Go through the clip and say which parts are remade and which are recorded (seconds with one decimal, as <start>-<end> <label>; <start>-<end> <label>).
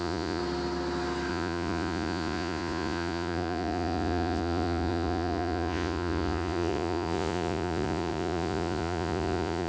0.0-0.4 remade; 0.4-1.3 recorded; 1.3-9.7 remade